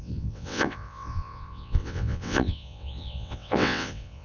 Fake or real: fake